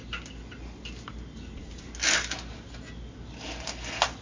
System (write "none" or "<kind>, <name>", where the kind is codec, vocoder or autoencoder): none